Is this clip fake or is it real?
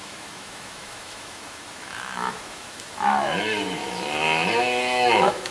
fake